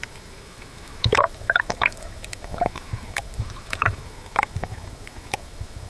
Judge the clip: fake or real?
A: fake